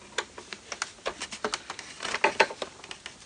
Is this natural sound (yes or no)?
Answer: yes